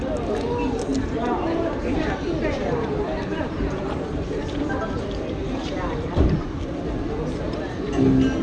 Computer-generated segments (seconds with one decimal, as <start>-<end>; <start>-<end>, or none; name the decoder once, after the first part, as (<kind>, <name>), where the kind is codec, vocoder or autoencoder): 0.9-2.1 (vocoder, BigVGAN v2); 3.3-4.6